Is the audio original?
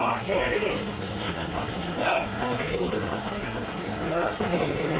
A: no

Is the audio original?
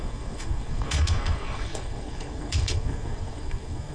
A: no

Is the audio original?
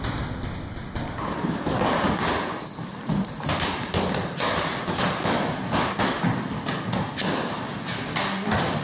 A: yes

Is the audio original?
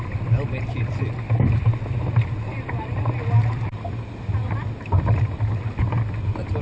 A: yes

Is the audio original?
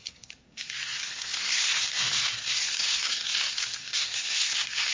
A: no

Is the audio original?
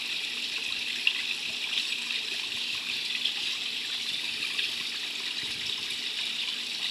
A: yes